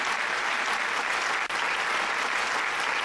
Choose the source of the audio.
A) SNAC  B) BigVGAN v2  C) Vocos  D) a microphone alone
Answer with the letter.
D